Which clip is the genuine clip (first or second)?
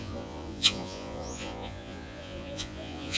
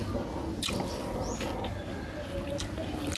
second